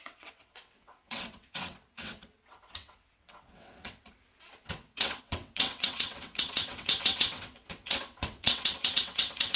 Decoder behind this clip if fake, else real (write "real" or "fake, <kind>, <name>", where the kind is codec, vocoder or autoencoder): fake, vocoder, WaveNeXt